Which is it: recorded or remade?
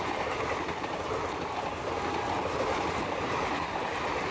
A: recorded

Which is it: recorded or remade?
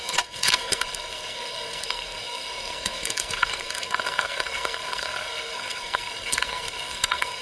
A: remade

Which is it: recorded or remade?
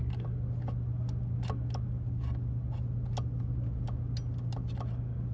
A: recorded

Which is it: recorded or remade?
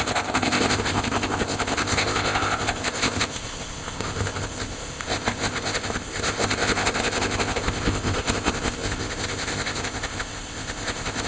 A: remade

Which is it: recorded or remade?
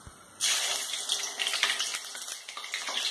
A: recorded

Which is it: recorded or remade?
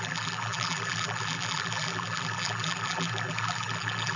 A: remade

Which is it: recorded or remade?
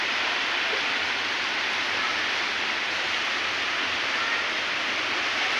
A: remade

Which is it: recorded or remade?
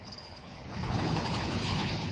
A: remade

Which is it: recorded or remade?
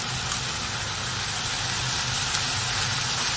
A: recorded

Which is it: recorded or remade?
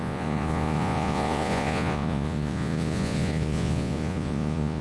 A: remade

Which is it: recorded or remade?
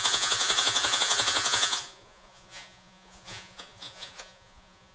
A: remade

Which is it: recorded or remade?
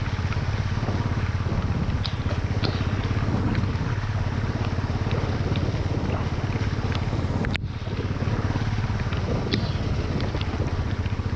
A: recorded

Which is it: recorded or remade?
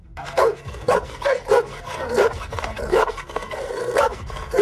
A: remade